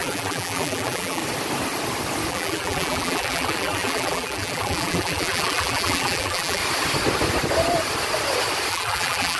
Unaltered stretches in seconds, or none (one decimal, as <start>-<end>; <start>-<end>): 1.2-2.3; 6.6-8.7